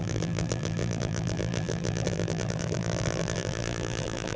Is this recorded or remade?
remade